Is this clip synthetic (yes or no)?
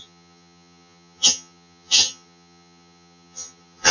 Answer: yes